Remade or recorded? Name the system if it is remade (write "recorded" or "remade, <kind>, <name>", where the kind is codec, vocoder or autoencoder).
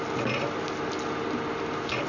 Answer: recorded